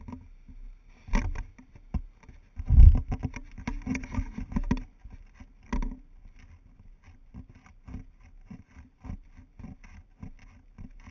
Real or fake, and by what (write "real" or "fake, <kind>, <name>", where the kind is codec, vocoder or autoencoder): real